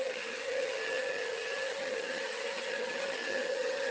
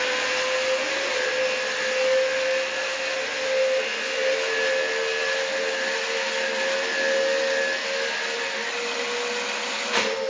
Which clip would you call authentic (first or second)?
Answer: second